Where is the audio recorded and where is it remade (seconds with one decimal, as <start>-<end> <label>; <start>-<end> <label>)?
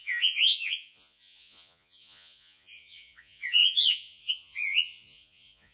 0.0-5.7 remade